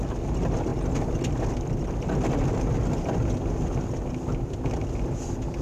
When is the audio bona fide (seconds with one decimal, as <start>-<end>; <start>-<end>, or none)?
0.0-5.6